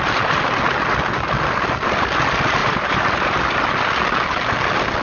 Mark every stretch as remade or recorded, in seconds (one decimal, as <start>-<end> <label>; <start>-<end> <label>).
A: 0.0-2.6 recorded; 2.6-3.5 remade; 3.5-5.0 recorded